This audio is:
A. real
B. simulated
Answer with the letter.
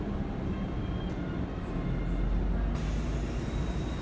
A